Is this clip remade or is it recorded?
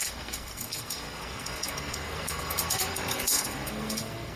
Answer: remade